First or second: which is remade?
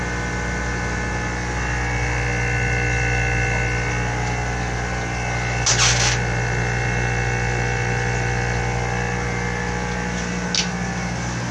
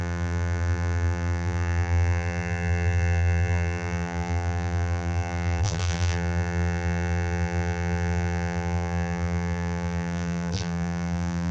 second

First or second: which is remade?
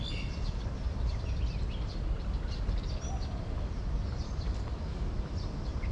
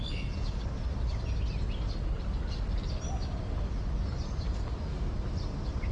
first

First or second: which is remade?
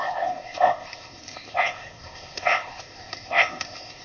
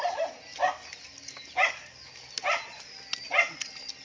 first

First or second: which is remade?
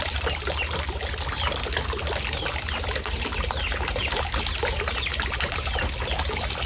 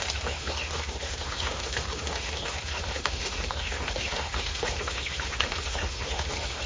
second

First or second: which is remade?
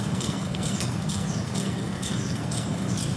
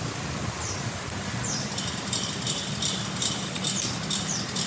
first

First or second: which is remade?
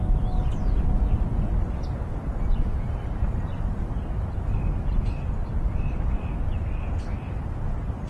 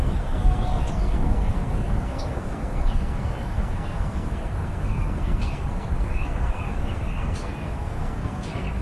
second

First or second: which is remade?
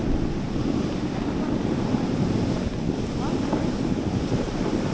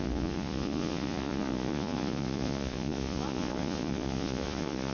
second